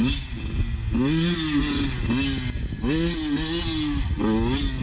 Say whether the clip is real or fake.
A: real